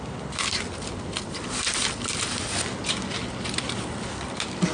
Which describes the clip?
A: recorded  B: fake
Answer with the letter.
A